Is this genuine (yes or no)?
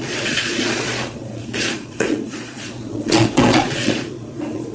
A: no